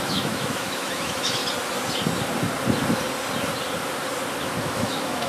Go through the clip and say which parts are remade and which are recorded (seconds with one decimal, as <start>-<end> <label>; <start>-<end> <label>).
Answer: 0.0-1.4 remade; 1.4-4.6 recorded; 4.6-5.3 remade